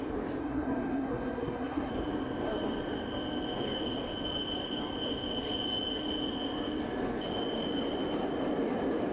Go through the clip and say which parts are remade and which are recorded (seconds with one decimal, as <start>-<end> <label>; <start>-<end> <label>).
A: 0.0-0.4 recorded; 0.4-1.9 remade; 1.9-9.1 recorded